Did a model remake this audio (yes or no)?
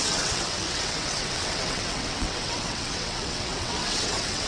yes